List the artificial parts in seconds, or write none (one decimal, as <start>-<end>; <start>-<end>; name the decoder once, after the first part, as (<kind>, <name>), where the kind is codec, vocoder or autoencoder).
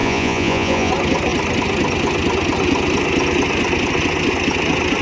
0.0-0.9 (vocoder, Vocos)